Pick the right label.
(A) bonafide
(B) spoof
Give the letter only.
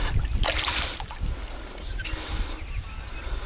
A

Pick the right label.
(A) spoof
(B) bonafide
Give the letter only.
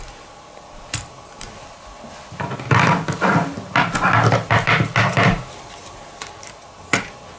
B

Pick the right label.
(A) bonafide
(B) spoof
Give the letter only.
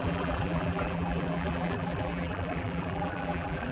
B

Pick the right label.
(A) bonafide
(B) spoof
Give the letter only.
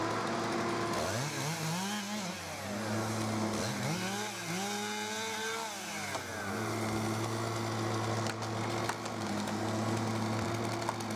A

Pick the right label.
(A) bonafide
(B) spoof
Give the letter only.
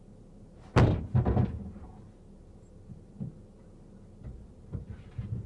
A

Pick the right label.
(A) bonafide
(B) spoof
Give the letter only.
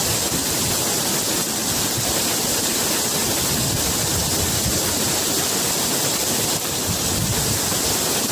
A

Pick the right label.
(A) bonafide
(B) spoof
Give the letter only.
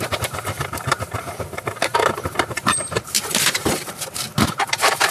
B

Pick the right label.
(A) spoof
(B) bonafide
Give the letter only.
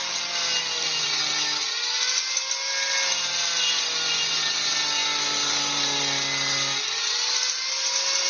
B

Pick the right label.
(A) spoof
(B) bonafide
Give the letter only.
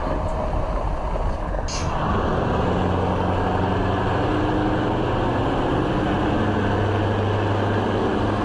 B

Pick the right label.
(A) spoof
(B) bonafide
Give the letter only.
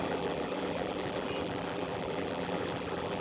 A